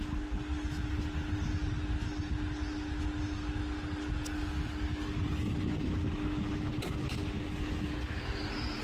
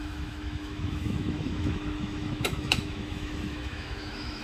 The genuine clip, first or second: first